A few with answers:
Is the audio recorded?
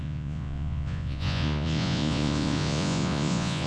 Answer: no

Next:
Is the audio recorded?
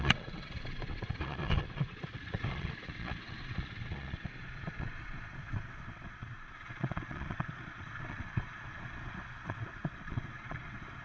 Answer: no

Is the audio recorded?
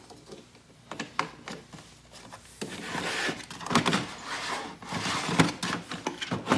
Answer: yes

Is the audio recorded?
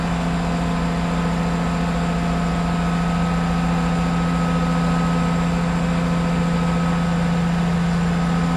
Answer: yes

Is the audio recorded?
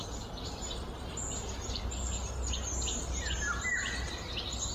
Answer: yes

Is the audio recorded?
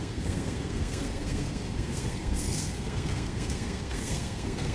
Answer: no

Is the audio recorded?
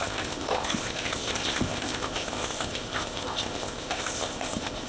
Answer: no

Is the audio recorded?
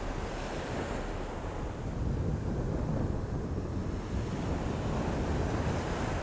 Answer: yes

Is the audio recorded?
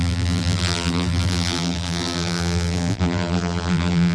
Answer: no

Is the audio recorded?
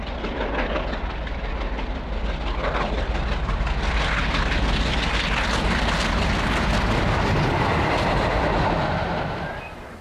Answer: yes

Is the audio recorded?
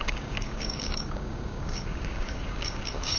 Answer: no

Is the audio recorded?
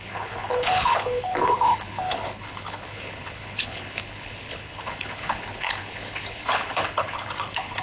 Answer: no